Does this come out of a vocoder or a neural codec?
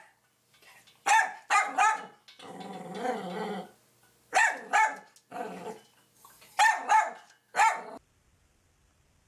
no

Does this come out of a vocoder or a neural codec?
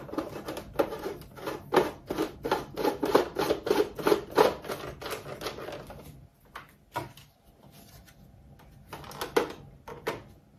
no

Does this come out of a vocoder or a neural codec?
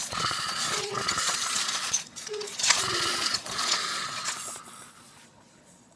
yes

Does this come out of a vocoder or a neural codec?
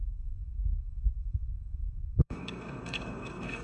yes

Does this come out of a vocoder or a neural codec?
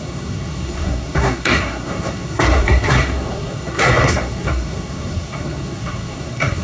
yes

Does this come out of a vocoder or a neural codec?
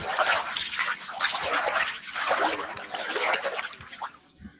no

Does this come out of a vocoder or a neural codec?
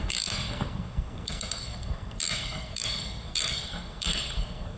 yes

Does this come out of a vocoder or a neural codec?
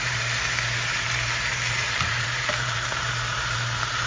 yes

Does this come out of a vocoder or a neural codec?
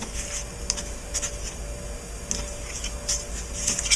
no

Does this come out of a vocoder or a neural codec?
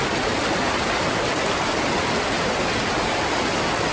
no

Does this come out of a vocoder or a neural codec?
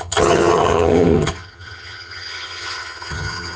yes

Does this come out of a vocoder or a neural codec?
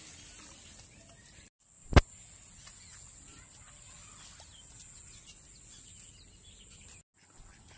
no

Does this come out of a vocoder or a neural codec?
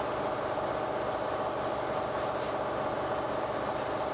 no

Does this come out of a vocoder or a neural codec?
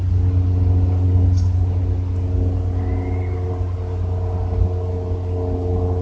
no